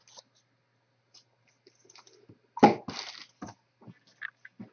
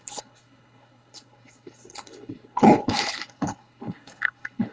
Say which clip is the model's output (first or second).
second